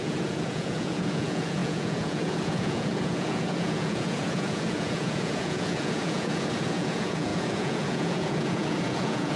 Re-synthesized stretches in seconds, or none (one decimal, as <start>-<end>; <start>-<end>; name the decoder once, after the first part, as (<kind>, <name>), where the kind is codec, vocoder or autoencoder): 0.0-9.4 (vocoder, Vocos)